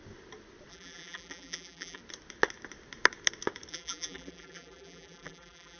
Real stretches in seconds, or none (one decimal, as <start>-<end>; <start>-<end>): 0.0-0.7; 2.0-3.7